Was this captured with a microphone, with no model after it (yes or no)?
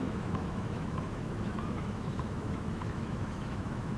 no